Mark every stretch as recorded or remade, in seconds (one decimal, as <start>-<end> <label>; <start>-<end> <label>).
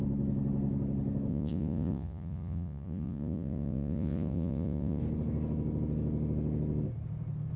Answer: 0.0-1.3 recorded; 1.3-5.0 remade; 5.0-7.6 recorded